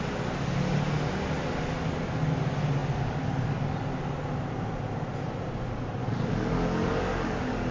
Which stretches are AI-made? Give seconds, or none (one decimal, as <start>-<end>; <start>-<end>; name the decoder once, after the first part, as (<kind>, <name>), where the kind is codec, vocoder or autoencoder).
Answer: 6.0-7.7 (codec, DAC)